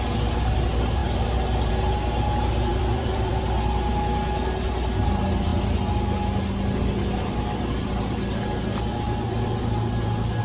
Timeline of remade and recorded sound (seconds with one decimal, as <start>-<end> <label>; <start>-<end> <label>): 0.0-2.7 recorded; 2.7-3.4 remade; 3.4-10.4 recorded